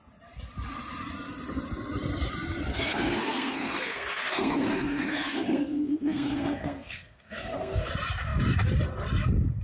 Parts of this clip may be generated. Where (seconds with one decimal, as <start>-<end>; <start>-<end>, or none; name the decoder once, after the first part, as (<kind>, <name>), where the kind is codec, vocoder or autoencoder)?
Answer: 2.7-7.9 (codec, SNAC)